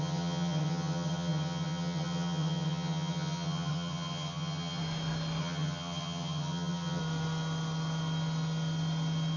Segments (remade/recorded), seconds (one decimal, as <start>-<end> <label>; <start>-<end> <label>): 0.0-4.8 remade; 4.8-5.4 recorded; 5.4-7.0 remade; 7.0-9.4 recorded